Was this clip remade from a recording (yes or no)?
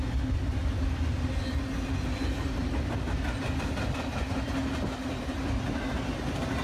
no